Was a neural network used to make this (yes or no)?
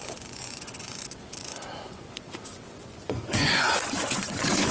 yes